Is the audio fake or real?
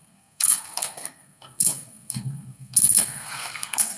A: fake